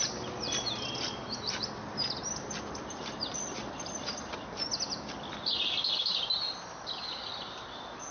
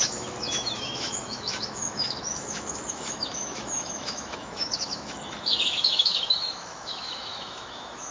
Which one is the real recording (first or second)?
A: first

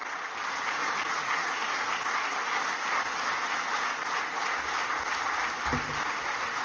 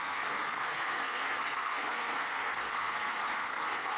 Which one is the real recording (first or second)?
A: first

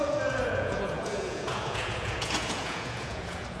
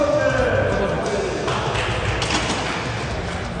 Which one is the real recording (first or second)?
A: second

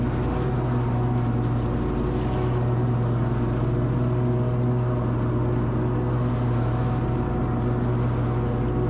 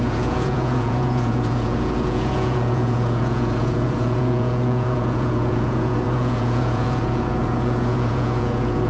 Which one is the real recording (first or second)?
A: first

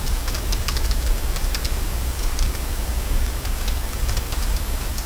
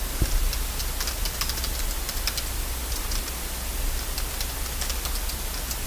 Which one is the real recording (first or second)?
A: second